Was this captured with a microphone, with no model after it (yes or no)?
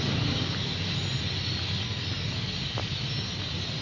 yes